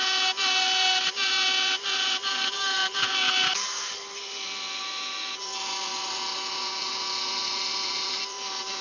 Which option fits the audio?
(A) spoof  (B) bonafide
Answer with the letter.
B